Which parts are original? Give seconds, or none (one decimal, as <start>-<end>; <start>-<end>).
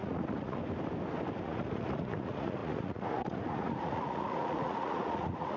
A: 0.6-1.4